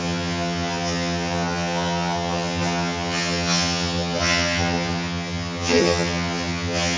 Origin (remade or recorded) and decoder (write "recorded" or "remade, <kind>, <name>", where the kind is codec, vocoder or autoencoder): remade, vocoder, HiFi-GAN